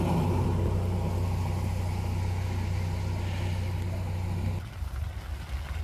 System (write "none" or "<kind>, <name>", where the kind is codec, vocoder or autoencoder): none